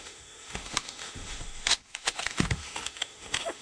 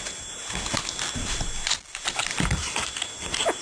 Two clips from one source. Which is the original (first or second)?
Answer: second